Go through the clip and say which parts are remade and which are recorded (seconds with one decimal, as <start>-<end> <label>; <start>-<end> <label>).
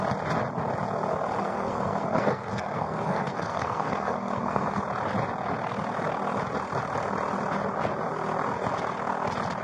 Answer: 0.0-1.4 recorded; 1.4-4.8 remade; 4.8-9.6 recorded